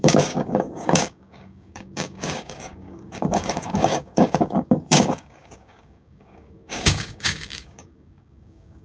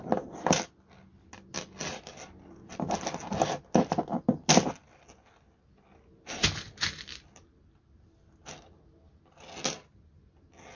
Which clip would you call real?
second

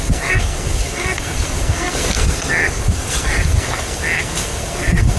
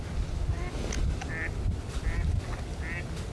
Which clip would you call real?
second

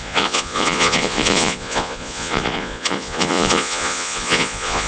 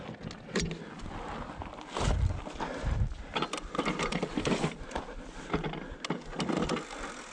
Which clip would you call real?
second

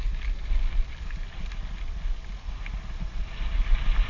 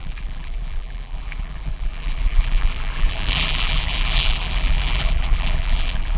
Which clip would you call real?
first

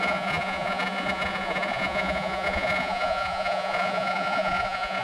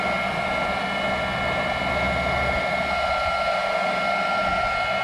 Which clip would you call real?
second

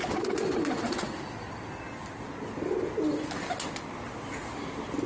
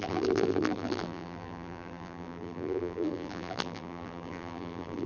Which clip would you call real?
first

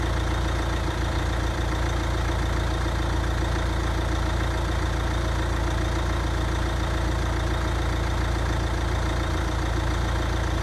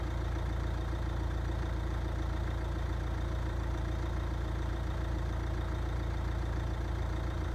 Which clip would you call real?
first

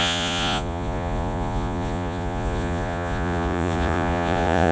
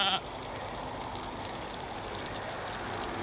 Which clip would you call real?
second